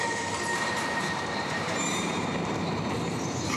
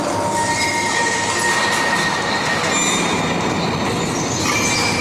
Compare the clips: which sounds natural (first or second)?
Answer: second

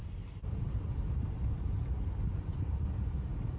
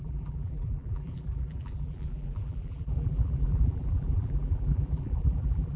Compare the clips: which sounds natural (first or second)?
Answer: first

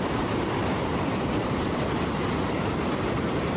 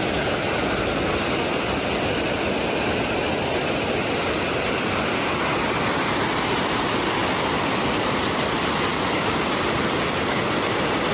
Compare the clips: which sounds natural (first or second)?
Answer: second